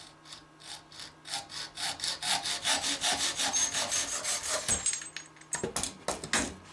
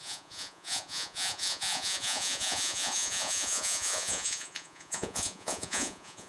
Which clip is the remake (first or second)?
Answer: second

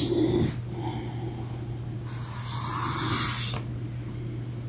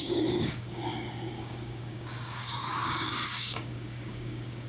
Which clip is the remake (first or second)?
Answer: second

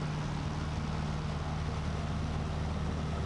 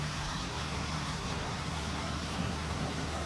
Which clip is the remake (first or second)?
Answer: second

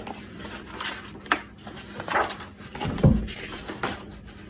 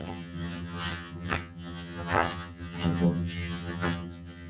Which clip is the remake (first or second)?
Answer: second